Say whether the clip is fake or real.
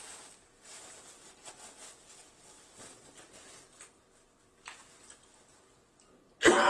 real